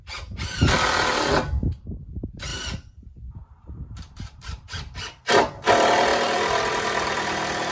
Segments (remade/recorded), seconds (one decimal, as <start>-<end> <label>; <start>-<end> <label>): 0.0-2.5 recorded; 2.5-5.4 remade; 5.4-7.7 recorded